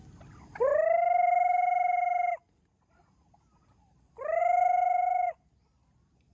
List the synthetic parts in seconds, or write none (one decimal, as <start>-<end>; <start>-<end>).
4.4-5.4